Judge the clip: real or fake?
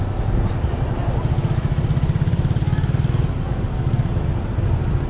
real